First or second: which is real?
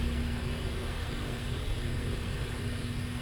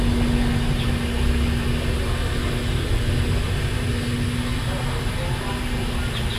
second